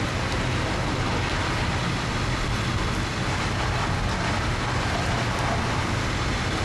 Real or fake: real